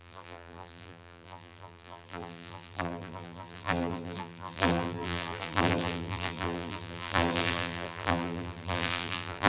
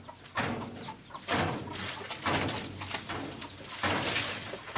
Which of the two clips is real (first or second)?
second